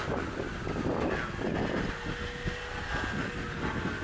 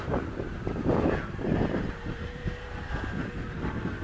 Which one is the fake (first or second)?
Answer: second